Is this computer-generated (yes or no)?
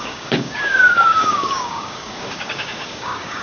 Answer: yes